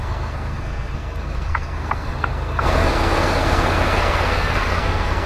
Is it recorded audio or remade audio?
remade